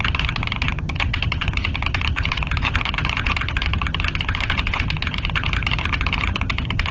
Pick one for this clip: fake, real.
fake